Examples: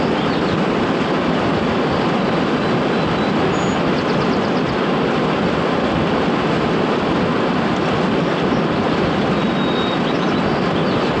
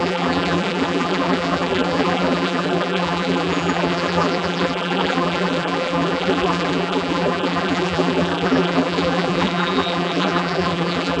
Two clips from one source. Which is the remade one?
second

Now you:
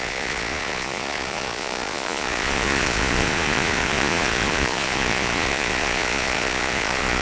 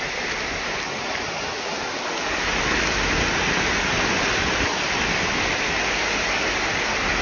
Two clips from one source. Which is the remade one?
first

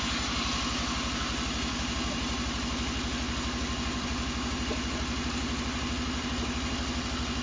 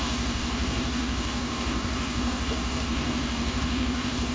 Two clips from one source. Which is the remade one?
second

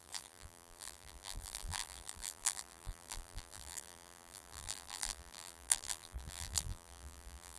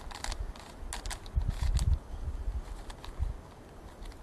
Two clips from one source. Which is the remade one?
first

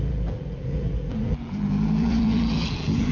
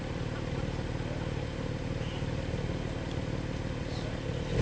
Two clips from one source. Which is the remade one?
first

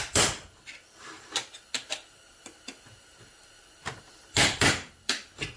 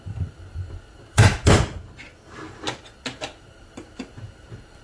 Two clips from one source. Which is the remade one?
first